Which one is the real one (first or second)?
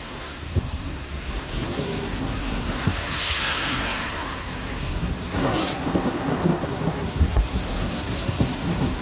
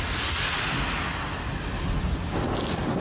second